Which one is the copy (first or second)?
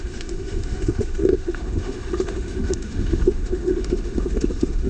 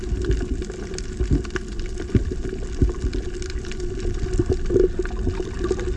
first